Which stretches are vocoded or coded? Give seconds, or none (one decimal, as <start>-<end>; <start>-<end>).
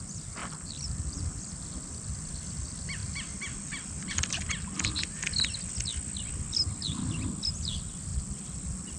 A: 0.4-1.5; 3.0-5.7; 8.1-9.0